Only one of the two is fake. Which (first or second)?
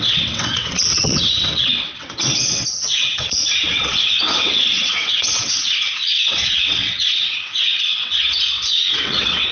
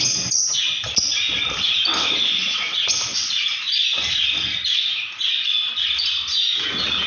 first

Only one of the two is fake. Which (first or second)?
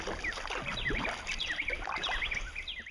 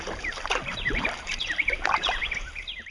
second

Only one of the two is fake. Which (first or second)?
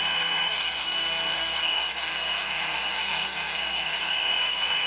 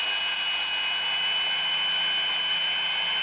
first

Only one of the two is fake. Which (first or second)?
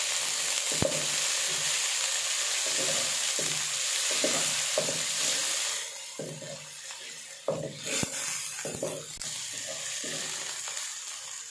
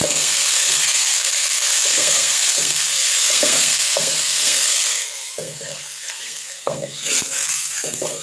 second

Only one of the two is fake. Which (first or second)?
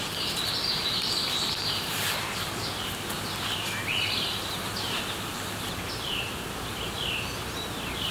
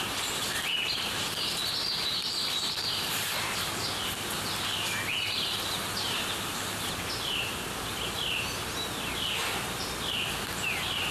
first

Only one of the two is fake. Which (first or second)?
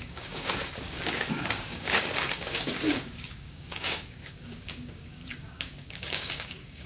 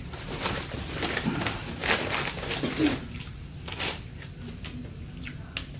first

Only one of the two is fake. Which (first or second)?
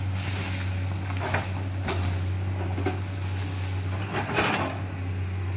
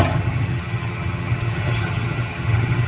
second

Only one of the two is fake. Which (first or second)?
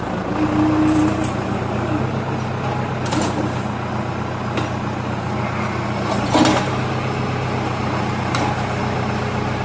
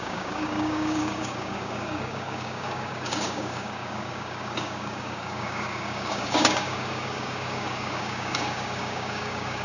second